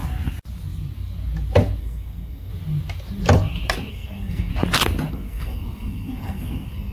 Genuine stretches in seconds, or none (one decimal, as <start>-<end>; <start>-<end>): 0.0-1.8; 2.5-3.9; 4.5-5.1